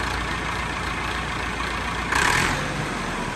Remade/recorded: remade